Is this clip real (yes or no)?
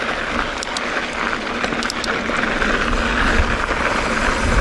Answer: yes